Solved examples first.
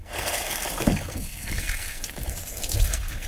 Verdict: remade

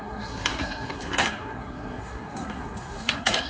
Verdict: remade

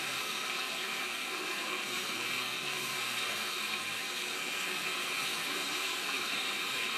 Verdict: remade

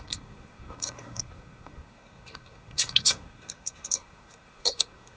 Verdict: remade